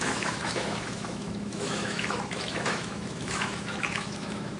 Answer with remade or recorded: remade